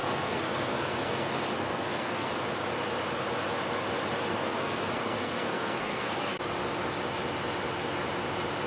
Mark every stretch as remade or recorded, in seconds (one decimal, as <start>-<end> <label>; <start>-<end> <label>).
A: 0.0-2.3 remade; 2.3-4.3 recorded; 4.3-6.4 remade; 6.4-8.7 recorded